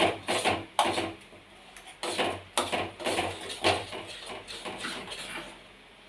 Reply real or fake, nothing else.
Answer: real